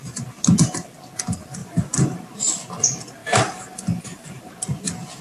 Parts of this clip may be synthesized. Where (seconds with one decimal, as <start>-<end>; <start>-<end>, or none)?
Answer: 1.6-2.2; 3.2-4.5